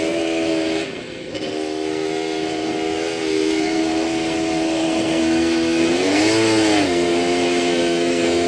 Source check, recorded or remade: remade